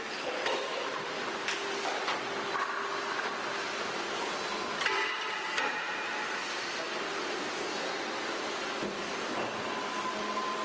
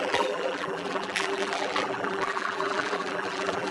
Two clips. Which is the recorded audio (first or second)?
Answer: first